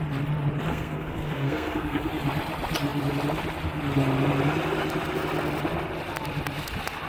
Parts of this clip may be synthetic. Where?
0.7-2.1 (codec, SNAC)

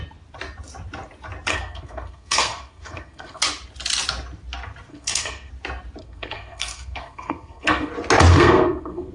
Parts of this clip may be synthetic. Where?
1.5-3.4 (codec, SNAC); 4.9-5.5; 6.0-7.9; 8.3-9.1

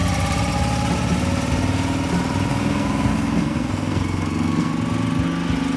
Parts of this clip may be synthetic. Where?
2.5-4.7 (codec, SNAC)